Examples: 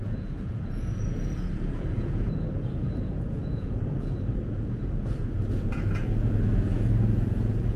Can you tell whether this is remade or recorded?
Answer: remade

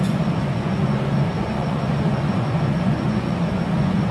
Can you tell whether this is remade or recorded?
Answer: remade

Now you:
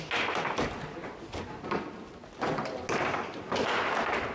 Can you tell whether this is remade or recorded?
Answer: recorded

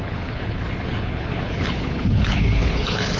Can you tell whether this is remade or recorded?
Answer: remade